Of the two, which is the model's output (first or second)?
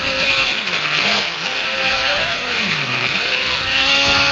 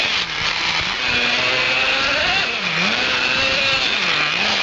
first